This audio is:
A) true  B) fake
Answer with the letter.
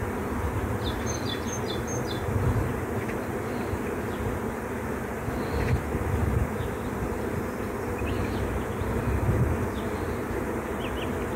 A